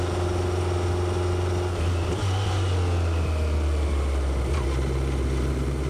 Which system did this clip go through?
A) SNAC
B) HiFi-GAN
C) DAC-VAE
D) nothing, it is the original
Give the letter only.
D